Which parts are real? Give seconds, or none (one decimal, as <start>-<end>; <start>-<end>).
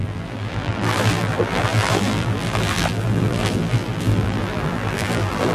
none